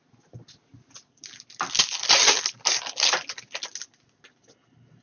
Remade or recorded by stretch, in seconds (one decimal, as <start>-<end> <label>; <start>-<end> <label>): 0.0-5.0 recorded